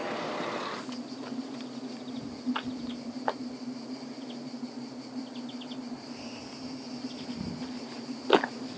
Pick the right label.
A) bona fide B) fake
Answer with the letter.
A